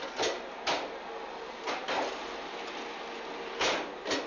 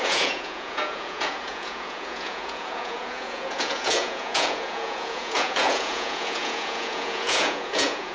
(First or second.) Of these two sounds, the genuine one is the first